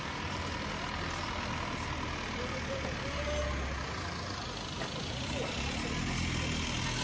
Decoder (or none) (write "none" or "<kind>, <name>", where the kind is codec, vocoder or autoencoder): none